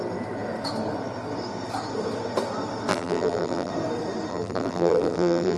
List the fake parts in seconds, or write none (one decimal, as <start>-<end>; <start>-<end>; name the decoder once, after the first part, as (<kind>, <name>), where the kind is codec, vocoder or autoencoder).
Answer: 2.9-3.7 (vocoder, BigVGAN v2); 4.3-5.6